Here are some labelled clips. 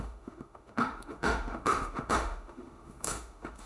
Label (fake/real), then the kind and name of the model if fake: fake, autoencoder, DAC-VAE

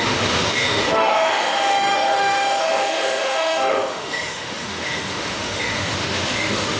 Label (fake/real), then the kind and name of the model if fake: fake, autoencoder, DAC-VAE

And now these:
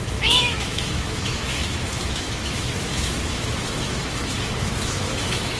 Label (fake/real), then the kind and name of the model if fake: fake, autoencoder, DAC-VAE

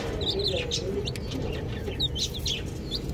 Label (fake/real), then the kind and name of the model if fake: real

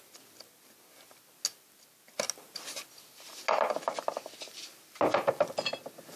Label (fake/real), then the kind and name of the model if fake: real